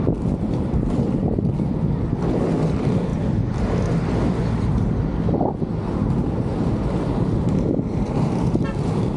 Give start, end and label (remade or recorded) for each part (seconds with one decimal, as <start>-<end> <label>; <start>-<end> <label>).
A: 0.0-6.5 recorded; 6.5-8.4 remade; 8.4-9.2 recorded